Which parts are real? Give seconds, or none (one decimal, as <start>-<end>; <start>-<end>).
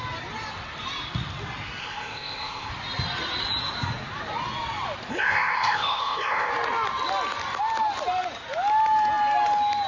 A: 0.0-1.8; 2.7-5.1; 6.5-9.9